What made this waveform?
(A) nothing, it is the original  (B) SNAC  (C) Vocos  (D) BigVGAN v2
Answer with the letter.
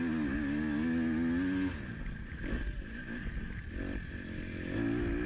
A